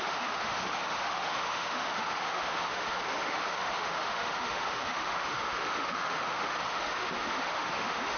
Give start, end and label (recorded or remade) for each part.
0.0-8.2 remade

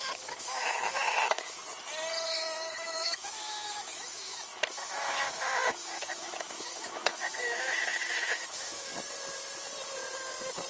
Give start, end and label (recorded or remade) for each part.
0.0-1.6 remade; 1.6-2.3 recorded; 2.3-8.9 remade; 8.9-10.7 recorded

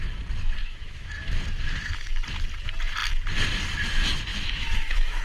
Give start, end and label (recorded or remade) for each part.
0.0-0.6 recorded; 0.6-1.1 remade; 1.1-4.3 recorded; 4.3-5.2 remade

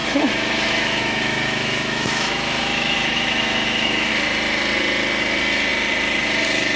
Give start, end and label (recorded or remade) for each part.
0.0-4.1 remade; 4.1-6.8 recorded

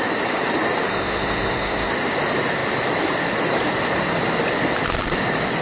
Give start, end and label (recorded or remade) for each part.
0.0-0.9 recorded; 0.9-1.9 remade; 1.9-5.6 recorded

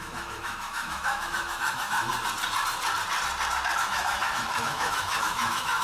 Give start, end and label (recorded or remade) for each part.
0.0-2.1 remade; 2.1-3.8 recorded; 3.8-5.8 remade